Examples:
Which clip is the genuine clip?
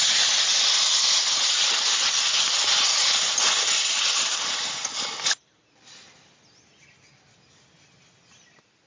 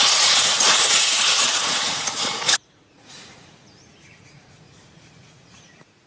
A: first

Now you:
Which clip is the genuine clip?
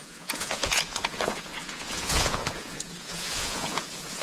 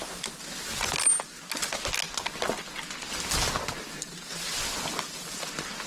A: second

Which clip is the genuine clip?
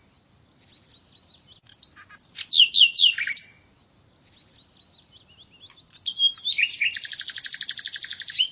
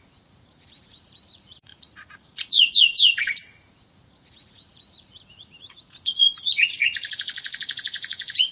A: first